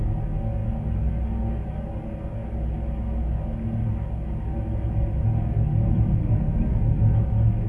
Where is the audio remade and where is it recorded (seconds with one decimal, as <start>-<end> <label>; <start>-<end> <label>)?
0.0-6.2 recorded; 6.2-6.8 remade; 6.8-7.7 recorded